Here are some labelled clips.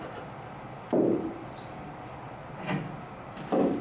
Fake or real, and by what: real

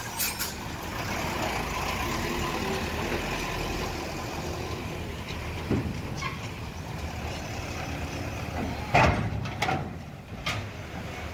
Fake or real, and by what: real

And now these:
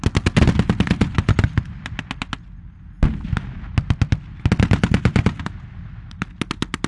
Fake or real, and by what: real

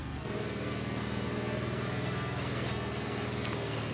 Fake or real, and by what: fake, codec, SNAC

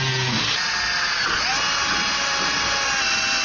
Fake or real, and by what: real